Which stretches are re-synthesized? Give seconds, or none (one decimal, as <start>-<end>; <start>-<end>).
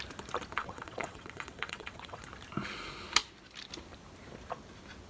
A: 0.6-2.2